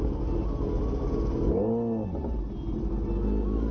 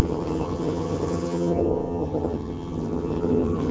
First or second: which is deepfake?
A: second